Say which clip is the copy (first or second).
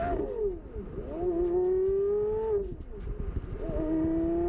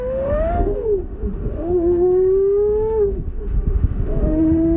second